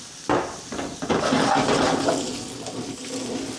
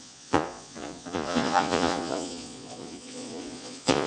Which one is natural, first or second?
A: first